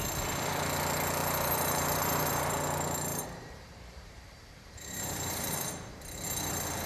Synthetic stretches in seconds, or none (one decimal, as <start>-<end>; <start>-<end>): 1.2-2.5; 3.1-5.9